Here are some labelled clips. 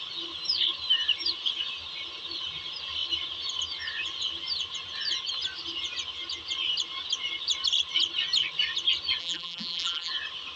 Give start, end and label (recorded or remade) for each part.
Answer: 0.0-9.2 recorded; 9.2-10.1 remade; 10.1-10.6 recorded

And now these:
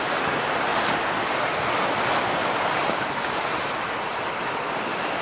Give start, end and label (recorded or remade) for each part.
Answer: 0.0-2.4 recorded; 2.4-3.6 remade; 3.6-5.2 recorded

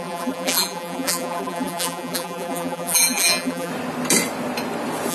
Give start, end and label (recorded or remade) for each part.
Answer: 0.0-3.7 remade; 3.7-5.1 recorded